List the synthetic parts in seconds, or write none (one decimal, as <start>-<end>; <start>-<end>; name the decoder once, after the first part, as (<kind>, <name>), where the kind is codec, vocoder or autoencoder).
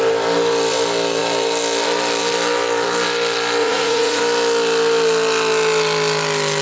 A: 3.6-4.2 (vocoder, Vocos)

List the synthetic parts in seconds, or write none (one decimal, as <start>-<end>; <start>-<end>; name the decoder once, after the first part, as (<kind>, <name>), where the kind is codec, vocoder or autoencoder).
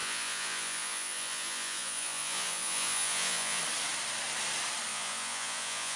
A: 0.0-3.6 (vocoder, Vocos); 4.9-6.0